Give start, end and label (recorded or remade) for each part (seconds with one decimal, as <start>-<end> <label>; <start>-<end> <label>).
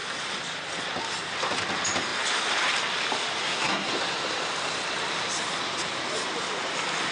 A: 0.0-3.4 recorded; 3.4-3.9 remade; 3.9-7.1 recorded